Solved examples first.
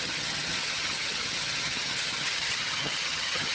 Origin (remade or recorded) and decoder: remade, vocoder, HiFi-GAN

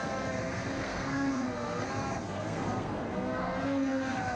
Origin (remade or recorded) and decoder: remade, codec, SNAC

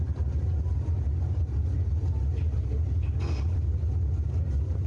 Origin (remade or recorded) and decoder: recorded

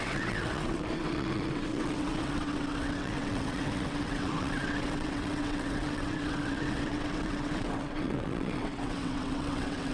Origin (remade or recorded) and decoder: remade, vocoder, WaveNeXt